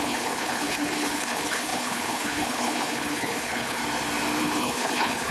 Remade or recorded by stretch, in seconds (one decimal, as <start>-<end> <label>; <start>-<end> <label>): 0.0-3.8 remade; 3.8-4.4 recorded; 4.4-5.3 remade